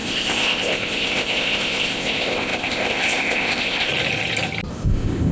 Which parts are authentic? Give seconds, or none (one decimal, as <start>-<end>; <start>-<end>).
3.9-4.7